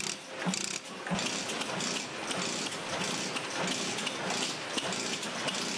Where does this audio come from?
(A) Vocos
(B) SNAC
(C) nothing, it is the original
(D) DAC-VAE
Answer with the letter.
C